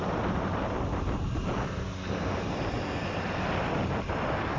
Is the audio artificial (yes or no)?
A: yes